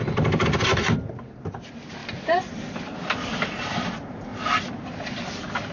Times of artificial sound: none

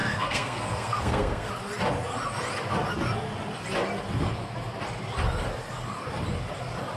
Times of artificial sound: 0.0-1.5 (codec, SNAC)